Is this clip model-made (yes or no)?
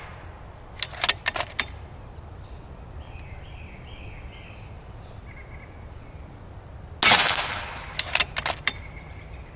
no